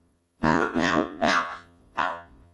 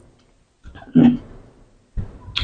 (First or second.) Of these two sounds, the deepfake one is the first